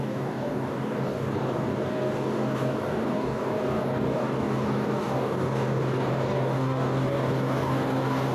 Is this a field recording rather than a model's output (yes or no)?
no